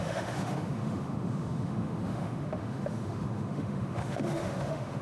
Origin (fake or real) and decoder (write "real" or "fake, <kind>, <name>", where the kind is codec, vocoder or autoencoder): fake, autoencoder, DAC-VAE